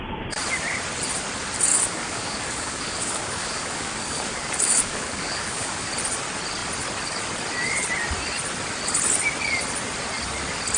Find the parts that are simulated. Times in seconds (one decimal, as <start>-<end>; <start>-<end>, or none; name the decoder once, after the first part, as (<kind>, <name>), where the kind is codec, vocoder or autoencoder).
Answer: 1.7-5.9 (codec, DAC)